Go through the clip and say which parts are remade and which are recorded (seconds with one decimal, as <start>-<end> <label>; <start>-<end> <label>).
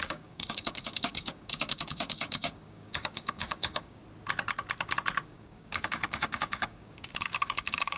0.0-4.0 remade; 4.0-5.2 recorded; 5.2-8.0 remade